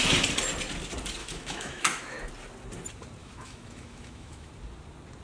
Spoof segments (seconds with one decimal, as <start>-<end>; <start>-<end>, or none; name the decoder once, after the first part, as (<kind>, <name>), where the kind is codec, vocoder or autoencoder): 1.2-2.3 (autoencoder, DAC-VAE); 3.2-4.5